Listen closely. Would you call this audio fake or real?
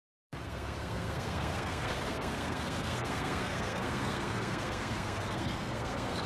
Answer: fake